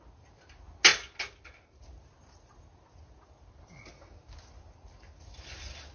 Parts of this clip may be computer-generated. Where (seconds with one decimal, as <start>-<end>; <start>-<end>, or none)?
none